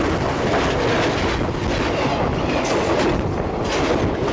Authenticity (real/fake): real